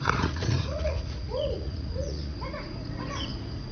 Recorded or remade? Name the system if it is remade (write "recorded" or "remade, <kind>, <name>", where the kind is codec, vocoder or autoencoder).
remade, vocoder, Vocos